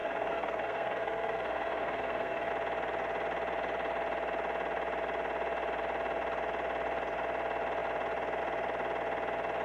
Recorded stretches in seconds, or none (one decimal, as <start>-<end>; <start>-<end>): 2.5-9.6